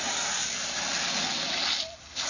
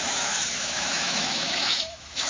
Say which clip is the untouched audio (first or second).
first